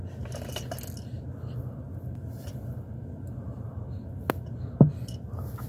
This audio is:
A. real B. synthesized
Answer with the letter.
A